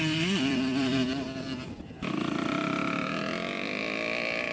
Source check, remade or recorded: remade